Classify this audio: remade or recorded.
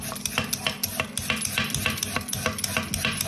recorded